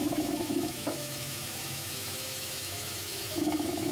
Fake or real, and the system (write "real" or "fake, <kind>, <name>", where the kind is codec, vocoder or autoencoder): fake, autoencoder, DAC-VAE